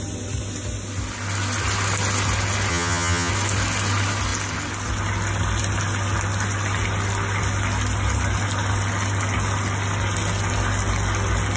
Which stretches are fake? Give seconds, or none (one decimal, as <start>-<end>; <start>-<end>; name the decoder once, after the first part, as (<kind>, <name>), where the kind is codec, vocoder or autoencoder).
2.7-3.3 (vocoder, HiFi-GAN)